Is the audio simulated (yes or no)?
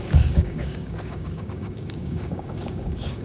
yes